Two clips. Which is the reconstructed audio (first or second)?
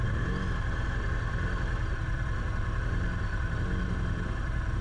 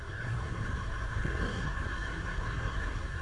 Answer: second